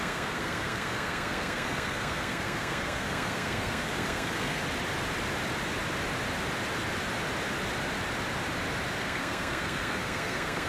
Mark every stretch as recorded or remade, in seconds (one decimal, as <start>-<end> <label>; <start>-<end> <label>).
0.0-4.6 remade; 4.6-9.0 recorded; 9.0-10.7 remade

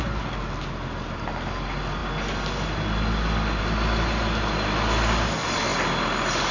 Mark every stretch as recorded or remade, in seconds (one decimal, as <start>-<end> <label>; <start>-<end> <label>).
0.0-6.5 recorded

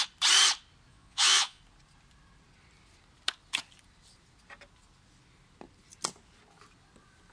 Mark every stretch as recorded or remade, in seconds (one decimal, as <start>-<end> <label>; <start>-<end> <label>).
0.0-0.9 recorded; 0.9-1.6 remade; 1.6-7.3 recorded

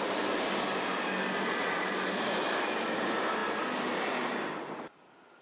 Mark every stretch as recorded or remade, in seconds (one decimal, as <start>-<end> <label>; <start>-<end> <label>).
0.0-5.4 recorded